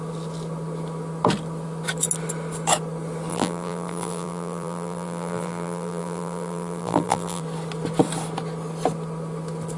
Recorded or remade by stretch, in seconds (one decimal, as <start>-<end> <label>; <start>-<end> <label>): 0.0-3.3 recorded; 3.3-7.4 remade; 7.4-9.8 recorded